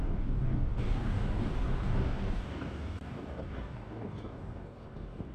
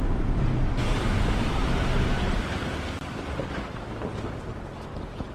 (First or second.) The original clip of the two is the second